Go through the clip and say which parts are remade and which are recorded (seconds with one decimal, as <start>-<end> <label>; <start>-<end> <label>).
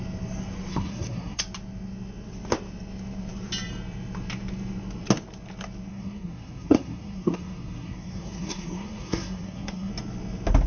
0.0-0.7 recorded; 0.7-1.4 remade; 1.4-5.9 recorded; 5.9-9.9 remade; 9.9-10.7 recorded